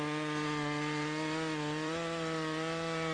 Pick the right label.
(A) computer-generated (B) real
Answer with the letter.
A